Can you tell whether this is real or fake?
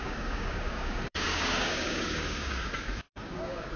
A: fake